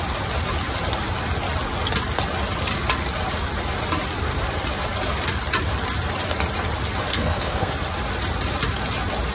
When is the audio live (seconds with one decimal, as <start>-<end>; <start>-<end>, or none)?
0.0-7.1; 7.7-9.3